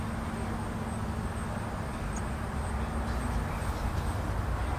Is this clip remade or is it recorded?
recorded